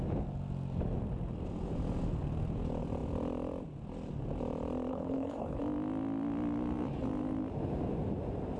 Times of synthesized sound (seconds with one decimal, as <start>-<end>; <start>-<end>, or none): 4.9-5.6